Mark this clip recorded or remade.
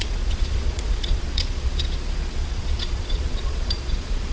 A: remade